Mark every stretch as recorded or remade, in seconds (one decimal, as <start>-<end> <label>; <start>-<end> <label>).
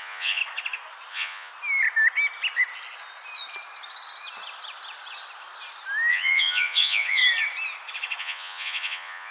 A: 0.0-0.4 remade; 0.4-1.1 recorded; 1.1-1.5 remade; 1.5-6.1 recorded; 6.1-7.2 remade; 7.2-8.2 recorded; 8.2-9.3 remade